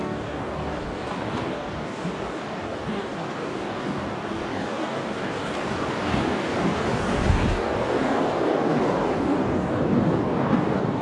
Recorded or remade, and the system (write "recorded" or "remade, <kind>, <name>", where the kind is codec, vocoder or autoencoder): remade, codec, DAC